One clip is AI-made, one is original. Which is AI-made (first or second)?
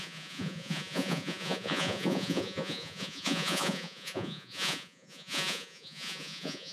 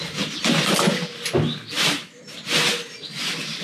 first